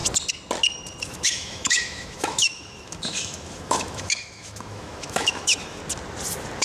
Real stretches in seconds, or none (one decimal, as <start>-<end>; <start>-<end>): 0.0-1.0; 5.8-6.6